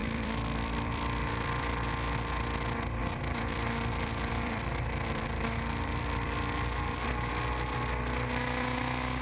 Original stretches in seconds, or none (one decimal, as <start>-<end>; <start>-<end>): 1.9-3.0; 7.3-9.2